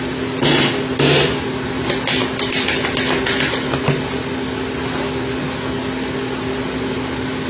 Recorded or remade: recorded